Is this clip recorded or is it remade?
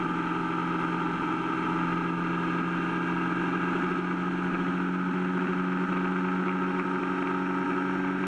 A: recorded